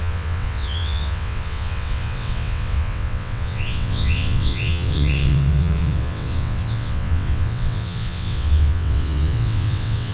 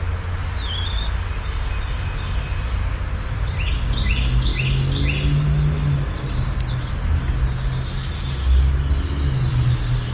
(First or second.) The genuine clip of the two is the second